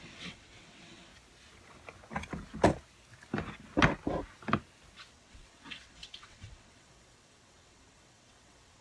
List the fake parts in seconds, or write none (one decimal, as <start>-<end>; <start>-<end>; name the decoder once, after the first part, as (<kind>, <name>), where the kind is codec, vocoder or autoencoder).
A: 0.0-1.1 (vocoder, WaveNeXt); 5.1-8.8